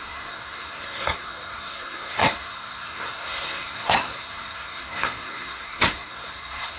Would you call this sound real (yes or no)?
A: no